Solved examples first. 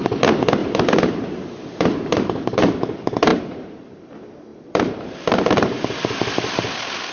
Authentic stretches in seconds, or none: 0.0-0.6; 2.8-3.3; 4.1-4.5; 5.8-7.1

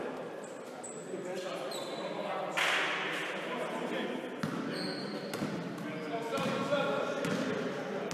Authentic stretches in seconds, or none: 0.0-8.1

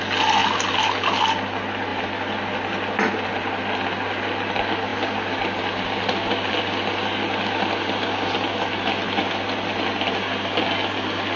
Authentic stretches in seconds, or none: 0.0-11.4